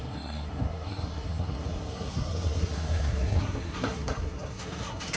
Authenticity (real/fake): fake